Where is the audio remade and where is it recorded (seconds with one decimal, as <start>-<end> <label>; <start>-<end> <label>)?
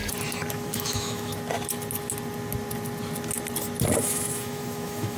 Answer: 0.0-0.5 recorded; 0.5-1.3 remade; 1.3-4.0 recorded; 4.0-5.2 remade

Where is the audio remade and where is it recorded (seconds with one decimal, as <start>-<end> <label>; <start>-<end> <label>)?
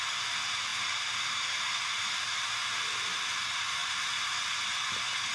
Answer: 0.0-5.3 recorded